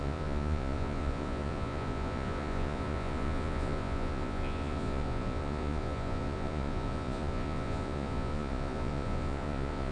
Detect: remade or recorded remade